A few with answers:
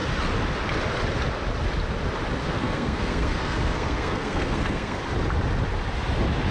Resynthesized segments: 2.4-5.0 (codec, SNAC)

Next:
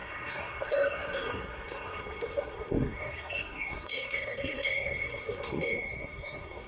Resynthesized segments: 0.0-6.7 (codec, SNAC)

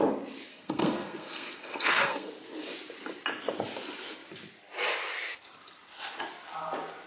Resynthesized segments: 0.5-2.3 (codec, SNAC)

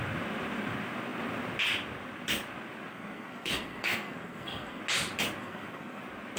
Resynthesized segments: 2.9-4.8 (codec, SNAC); 5.4-6.0

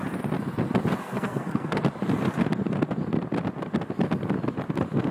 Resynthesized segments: 1.0-1.8 (codec, SNAC)

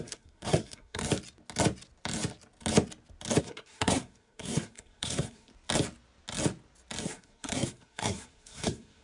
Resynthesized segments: 0.0-1.0 (codec, SNAC); 3.4-5.5; 7.0-9.0

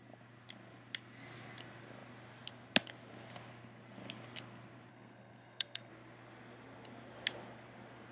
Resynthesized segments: 4.9-5.9 (codec, SNAC)

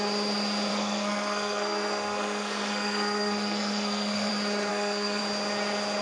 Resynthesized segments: 0.7-4.3 (codec, SNAC); 4.7-5.2